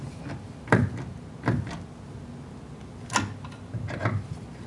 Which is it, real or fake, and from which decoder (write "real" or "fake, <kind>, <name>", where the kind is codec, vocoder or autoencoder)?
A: real